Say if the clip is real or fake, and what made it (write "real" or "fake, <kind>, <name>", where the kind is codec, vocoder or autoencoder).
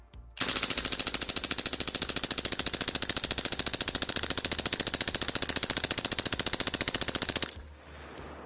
real